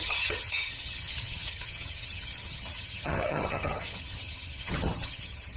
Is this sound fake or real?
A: fake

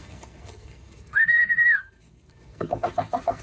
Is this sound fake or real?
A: fake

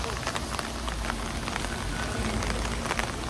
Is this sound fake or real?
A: real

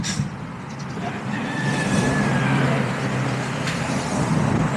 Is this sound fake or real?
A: fake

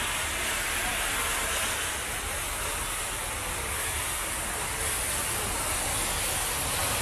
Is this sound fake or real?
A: real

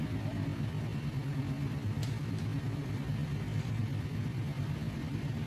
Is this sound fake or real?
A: real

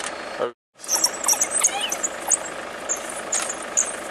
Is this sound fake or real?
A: real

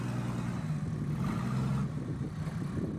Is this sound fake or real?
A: real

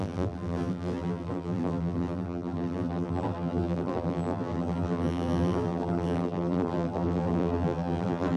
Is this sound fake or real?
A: fake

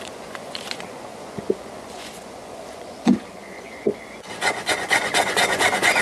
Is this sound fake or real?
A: fake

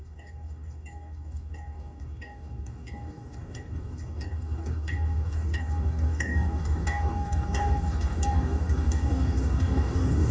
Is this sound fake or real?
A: fake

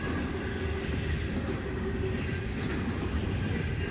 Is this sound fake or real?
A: real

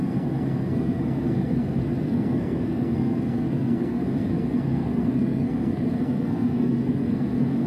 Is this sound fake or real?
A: fake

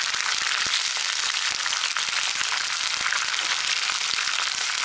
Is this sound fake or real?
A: real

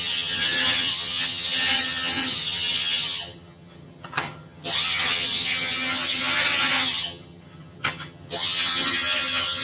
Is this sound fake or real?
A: fake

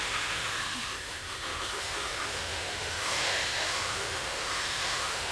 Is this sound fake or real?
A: fake